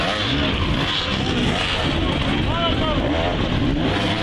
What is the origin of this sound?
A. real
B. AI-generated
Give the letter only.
A